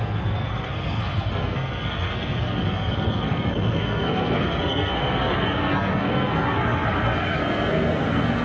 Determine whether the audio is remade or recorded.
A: remade